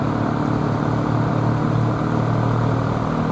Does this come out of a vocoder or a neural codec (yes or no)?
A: no